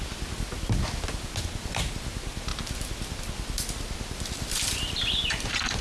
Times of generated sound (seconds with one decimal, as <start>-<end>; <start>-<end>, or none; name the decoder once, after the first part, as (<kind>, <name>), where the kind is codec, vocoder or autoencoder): none